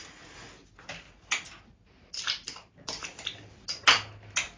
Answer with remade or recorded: recorded